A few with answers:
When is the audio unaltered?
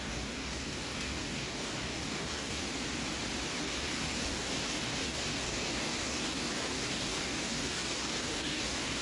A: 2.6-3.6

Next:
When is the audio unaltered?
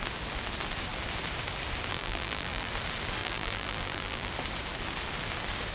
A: 0.0-1.9; 2.7-3.2; 4.3-5.7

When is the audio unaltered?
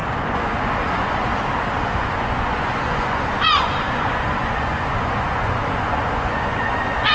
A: 1.3-1.8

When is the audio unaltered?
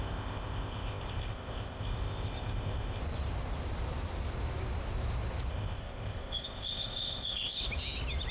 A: 3.0-5.5; 7.6-8.3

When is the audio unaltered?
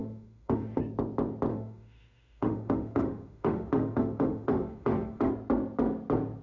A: 0.8-1.5; 5.3-6.4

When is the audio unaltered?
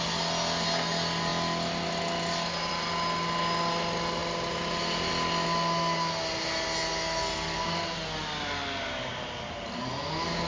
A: 0.0-10.5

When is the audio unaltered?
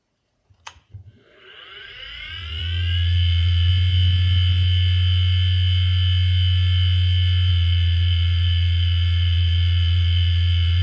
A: 3.7-7.5